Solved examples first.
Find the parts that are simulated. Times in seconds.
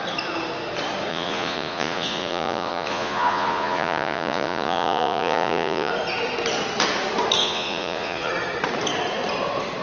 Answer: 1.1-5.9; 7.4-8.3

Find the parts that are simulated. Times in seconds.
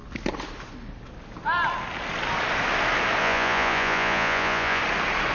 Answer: 3.2-4.8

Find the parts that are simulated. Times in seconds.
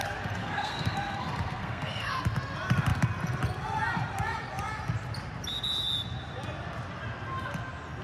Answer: 0.4-2.2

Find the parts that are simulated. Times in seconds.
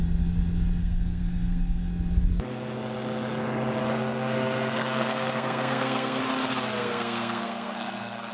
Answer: 0.8-1.9; 3.8-6.2; 6.8-8.3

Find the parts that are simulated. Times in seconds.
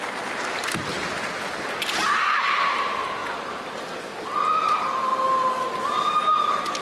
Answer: 0.0-0.9; 2.1-3.2; 4.5-5.1; 6.3-6.8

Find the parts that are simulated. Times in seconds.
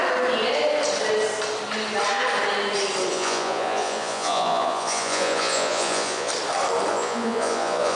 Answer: 3.1-6.3; 6.9-7.9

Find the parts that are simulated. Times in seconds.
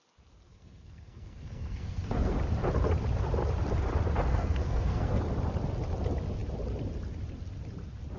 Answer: 0.5-2.4; 4.3-5.2